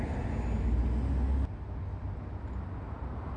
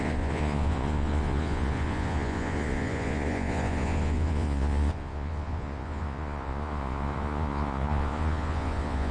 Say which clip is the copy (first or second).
second